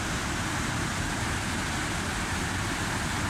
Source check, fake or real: real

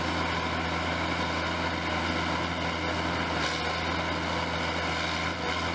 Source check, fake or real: real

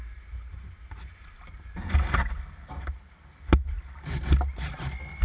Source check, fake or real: real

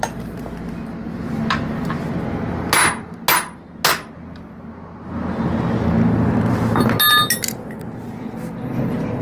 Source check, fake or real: real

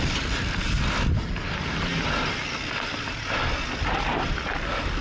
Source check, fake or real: real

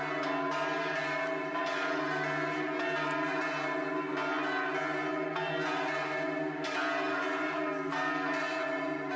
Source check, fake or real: real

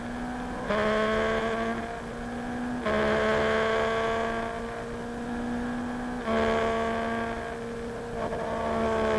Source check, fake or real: real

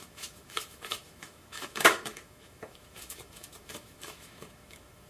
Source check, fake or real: fake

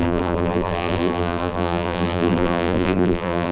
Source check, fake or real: fake